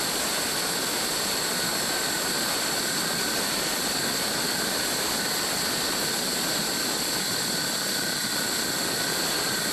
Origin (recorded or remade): recorded